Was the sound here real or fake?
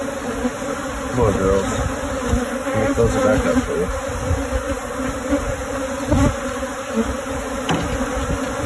real